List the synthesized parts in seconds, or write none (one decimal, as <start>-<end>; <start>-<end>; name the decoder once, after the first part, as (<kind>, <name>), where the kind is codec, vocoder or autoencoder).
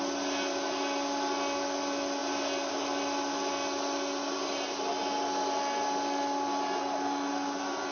none